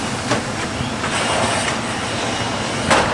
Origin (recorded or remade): recorded